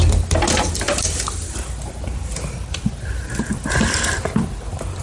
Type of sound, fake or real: real